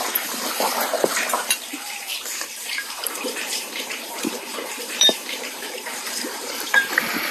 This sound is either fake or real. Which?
fake